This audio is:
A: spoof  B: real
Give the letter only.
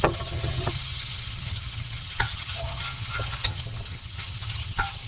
A